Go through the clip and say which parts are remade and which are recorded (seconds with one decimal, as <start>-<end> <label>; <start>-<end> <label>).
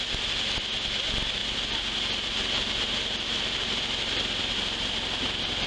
0.0-5.7 recorded